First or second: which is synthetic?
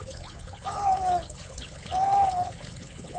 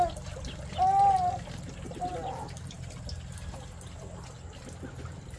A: first